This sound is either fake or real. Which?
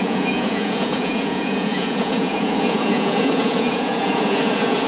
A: fake